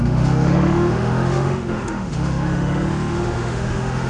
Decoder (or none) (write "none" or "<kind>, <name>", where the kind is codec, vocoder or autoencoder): autoencoder, DAC-VAE